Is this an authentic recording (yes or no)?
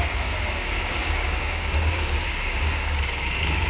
no